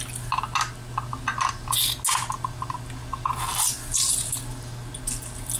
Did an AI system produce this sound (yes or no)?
no